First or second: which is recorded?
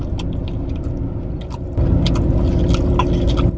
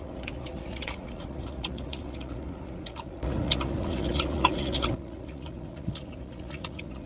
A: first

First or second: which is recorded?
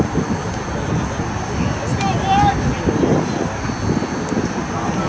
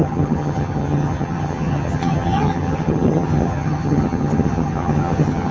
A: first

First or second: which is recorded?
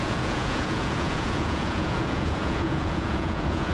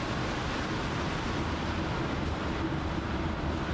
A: second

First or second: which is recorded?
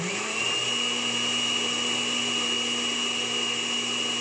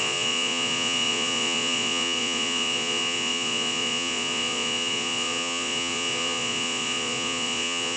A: first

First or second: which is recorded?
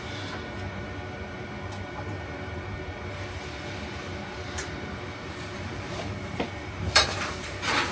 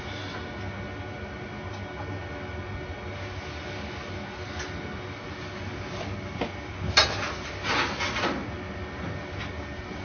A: second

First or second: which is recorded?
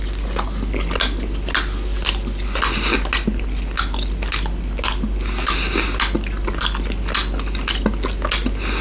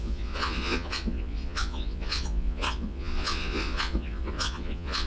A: first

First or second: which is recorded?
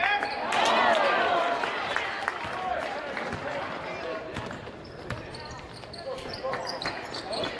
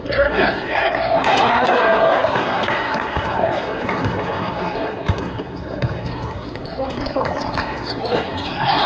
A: first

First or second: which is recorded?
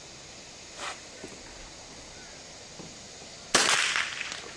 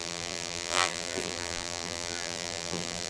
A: first